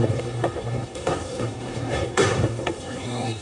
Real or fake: fake